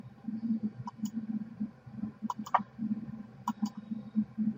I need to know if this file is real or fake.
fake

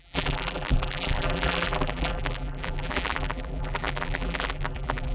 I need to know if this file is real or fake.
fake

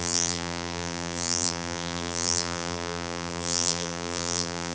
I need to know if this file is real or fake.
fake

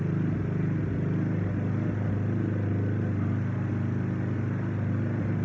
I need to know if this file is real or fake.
real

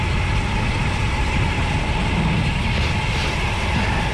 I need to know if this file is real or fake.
real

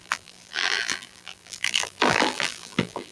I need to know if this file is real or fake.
fake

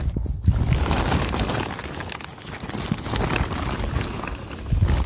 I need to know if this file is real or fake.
real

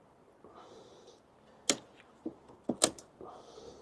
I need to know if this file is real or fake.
real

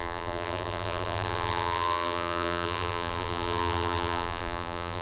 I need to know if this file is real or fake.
fake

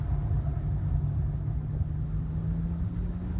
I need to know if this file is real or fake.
real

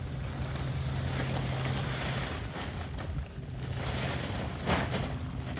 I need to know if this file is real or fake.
real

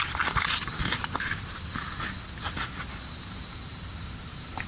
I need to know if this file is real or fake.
real